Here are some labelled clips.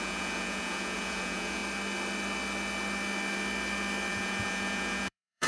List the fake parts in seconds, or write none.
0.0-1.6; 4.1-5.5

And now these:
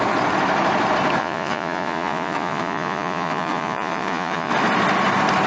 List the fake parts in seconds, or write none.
1.2-4.5

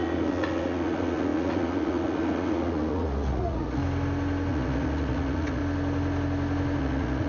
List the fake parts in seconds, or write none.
0.0-3.8; 4.5-5.6; 6.8-7.3

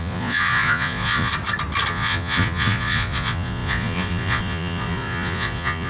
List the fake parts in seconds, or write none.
0.0-1.3; 1.9-5.9